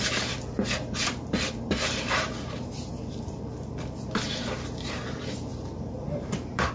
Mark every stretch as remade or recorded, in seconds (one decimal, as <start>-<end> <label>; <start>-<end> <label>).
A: 0.0-5.5 recorded; 5.5-6.7 remade